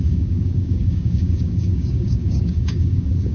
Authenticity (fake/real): fake